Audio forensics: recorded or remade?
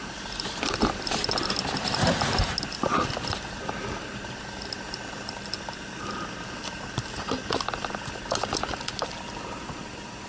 recorded